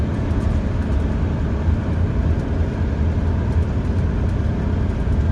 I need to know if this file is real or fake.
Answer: real